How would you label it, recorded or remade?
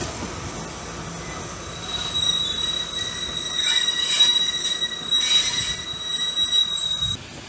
recorded